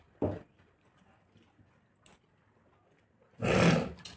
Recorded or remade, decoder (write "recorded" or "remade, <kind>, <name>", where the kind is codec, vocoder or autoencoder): recorded